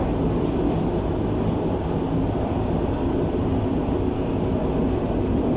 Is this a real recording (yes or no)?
yes